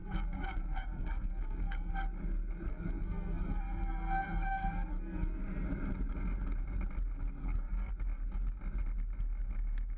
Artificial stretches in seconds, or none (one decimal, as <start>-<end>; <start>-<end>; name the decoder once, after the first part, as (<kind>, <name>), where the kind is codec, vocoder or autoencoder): 0.0-1.9 (codec, SNAC); 2.7-5.4; 7.4-7.9